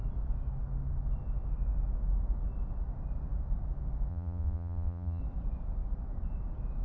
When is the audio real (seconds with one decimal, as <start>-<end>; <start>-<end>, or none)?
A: 0.0-4.1; 5.2-6.8

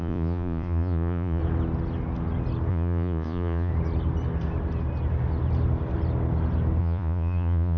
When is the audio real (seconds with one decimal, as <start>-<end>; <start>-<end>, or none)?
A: 1.4-2.7; 3.7-6.8

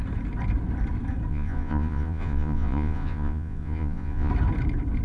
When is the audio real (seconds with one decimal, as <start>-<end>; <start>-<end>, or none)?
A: 0.0-1.3; 4.3-5.0

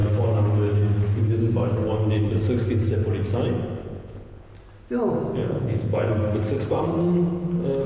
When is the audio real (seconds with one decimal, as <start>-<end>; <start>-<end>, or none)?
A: 0.0-3.8; 4.5-5.4; 6.1-7.9